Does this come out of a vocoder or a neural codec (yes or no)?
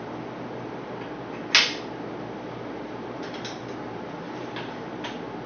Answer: no